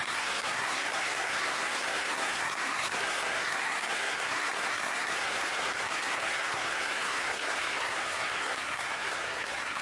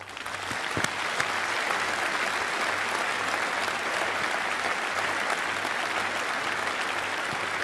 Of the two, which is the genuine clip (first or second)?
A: second